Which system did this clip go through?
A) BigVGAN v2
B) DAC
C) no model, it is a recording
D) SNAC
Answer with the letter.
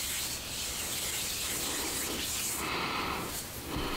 A